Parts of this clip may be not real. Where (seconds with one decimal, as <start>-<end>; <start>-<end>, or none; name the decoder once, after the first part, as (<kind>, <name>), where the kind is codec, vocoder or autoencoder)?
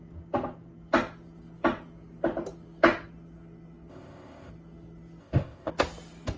3.9-4.5 (codec, ZipCodec); 5.2-5.7